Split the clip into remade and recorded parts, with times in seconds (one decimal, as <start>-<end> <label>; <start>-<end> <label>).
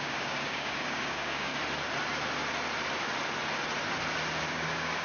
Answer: 0.0-1.5 remade; 1.5-4.5 recorded; 4.5-5.0 remade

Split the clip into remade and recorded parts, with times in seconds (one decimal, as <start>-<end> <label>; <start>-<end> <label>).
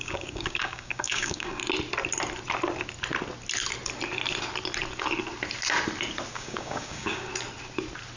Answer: 0.0-1.6 remade; 1.6-6.3 recorded; 6.3-7.3 remade; 7.3-8.2 recorded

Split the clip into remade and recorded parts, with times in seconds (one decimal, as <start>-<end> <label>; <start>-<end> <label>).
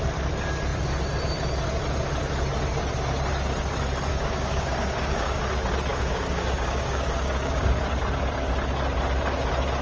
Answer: 0.0-4.1 recorded; 4.1-5.4 remade; 5.4-5.9 recorded; 5.9-7.8 remade; 7.8-9.8 recorded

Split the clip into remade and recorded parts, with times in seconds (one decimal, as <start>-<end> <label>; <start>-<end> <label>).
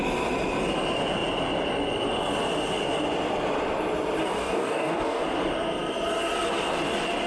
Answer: 0.0-4.2 recorded; 4.2-5.2 remade; 5.2-7.3 recorded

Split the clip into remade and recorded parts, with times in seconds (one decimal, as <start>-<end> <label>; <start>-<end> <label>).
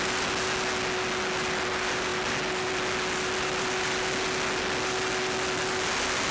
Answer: 0.0-6.3 recorded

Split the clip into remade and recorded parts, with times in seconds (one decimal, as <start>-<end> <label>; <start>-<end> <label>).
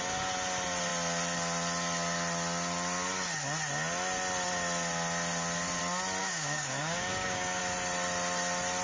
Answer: 0.0-6.2 recorded; 6.2-7.6 remade; 7.6-8.8 recorded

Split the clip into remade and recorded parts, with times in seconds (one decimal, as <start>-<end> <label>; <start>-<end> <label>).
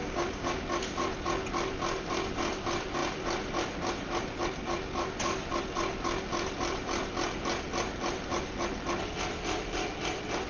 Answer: 0.0-0.6 remade; 0.6-10.5 recorded